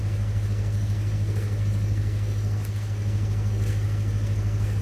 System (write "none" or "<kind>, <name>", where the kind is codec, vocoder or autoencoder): codec, SNAC